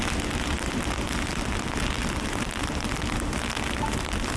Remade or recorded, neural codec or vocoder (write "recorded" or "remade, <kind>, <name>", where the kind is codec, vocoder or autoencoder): recorded